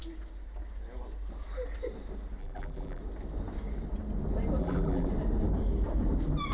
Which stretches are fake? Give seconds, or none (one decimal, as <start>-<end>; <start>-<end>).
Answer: 2.4-3.0; 4.6-5.1